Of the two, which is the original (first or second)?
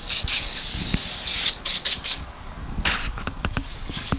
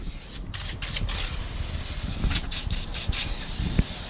second